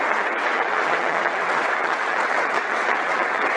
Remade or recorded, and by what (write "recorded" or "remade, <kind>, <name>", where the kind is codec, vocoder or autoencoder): remade, vocoder, WaveNeXt